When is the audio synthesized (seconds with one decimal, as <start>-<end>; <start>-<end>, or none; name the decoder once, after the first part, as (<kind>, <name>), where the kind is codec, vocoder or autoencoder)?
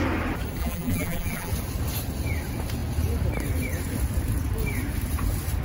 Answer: 0.6-1.5 (vocoder, BigVGAN v2)